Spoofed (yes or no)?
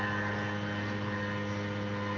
no